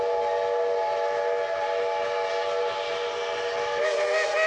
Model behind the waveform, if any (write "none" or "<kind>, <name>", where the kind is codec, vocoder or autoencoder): none